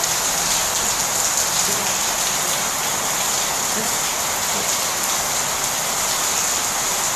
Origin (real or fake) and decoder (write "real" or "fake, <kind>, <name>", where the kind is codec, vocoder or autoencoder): real